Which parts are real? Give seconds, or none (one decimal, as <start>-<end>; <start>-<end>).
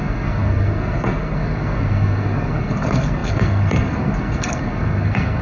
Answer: none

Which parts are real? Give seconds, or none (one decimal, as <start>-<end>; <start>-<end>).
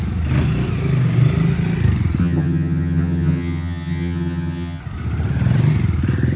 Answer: 0.0-2.2; 4.8-6.4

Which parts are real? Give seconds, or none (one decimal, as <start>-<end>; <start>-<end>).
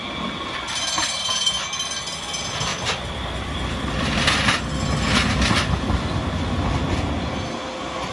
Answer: 0.0-8.1